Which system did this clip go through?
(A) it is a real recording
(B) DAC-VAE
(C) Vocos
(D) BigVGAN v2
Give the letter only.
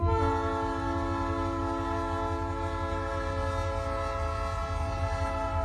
A